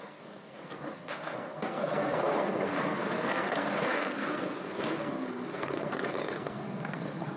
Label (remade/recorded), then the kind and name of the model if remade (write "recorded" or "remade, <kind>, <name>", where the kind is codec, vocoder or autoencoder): remade, codec, SNAC